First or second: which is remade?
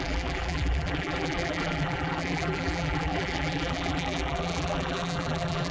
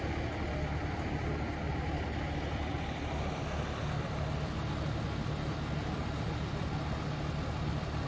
first